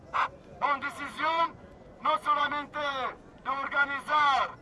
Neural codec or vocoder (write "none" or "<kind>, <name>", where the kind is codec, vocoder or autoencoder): vocoder, Vocos